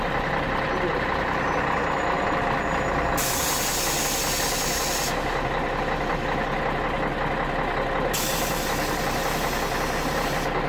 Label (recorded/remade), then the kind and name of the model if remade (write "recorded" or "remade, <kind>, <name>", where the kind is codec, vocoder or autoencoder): recorded